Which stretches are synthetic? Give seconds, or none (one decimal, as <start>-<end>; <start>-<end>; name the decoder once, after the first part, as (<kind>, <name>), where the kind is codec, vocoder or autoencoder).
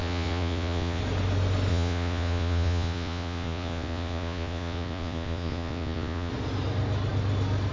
0.0-1.0 (vocoder, Vocos); 1.7-6.3